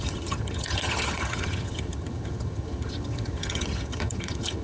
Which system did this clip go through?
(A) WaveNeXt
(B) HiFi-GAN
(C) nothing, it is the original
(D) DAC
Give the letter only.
B